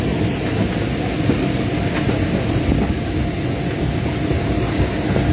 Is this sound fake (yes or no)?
no